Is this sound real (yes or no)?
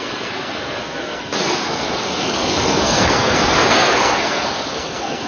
no